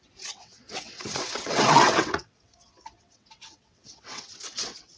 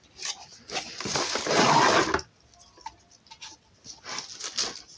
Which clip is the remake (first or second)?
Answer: first